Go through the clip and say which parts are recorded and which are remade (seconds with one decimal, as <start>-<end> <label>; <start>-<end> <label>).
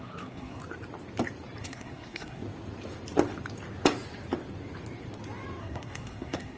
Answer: 0.0-0.6 remade; 0.6-1.6 recorded; 1.6-2.4 remade; 2.4-5.6 recorded; 5.6-6.6 remade